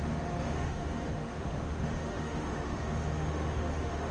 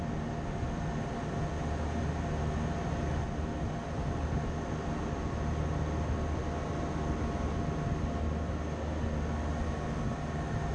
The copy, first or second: first